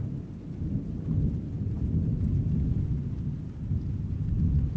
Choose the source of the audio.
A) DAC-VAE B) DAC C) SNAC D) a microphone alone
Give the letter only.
D